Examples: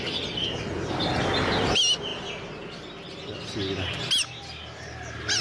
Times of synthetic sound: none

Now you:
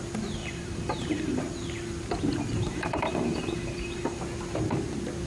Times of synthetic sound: 0.4-1.4; 2.7-4.2